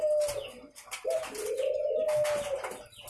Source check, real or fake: real